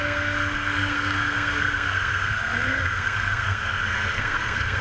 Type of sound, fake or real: fake